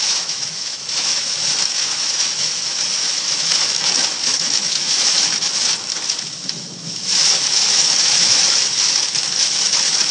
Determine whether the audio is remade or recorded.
remade